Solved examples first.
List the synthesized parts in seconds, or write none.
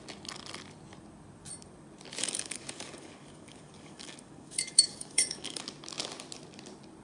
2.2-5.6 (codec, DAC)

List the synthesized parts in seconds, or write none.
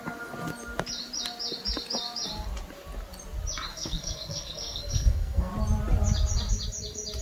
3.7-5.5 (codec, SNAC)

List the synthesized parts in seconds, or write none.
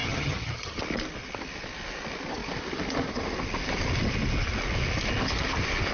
0.0-0.8 (vocoder, HiFi-GAN)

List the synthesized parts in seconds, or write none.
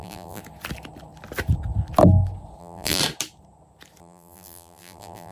0.0-0.4 (vocoder, BigVGAN v2); 2.6-3.0; 4.0-5.3